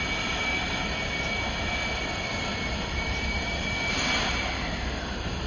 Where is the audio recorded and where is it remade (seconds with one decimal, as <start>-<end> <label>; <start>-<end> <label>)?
0.0-2.5 recorded; 2.5-4.3 remade; 4.3-5.5 recorded